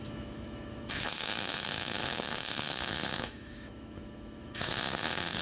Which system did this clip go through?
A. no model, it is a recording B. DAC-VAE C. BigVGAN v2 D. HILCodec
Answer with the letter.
B